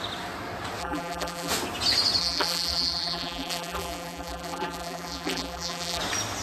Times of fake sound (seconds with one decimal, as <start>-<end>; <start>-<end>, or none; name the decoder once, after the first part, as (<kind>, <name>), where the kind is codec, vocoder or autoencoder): 0.8-1.5 (vocoder, BigVGAN v2); 2.2-6.0